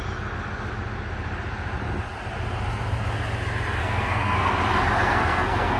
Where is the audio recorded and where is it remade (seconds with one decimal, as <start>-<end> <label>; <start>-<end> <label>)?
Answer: 0.0-3.8 recorded; 3.8-4.5 remade; 4.5-5.0 recorded; 5.0-5.8 remade